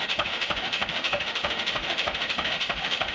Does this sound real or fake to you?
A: fake